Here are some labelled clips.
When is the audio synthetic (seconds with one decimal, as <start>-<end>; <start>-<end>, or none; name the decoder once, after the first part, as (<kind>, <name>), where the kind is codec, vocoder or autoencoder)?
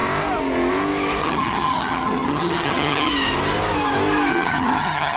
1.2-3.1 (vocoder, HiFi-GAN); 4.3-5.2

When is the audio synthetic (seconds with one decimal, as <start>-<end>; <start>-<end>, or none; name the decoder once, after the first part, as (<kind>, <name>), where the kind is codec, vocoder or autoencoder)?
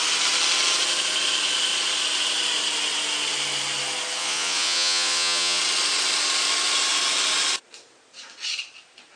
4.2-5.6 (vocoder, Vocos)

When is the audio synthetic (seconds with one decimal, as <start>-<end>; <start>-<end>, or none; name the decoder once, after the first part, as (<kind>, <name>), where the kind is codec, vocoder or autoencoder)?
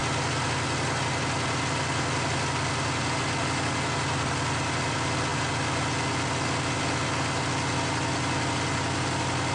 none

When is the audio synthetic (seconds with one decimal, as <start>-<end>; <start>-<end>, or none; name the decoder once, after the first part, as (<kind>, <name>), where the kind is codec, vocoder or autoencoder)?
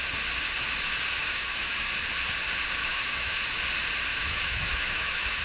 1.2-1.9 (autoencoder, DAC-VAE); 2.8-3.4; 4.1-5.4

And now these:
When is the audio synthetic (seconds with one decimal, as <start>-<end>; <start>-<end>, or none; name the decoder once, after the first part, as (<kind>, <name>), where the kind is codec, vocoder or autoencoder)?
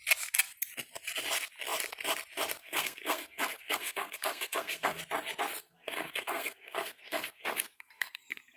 2.6-5.0 (codec, SNAC); 5.6-8.6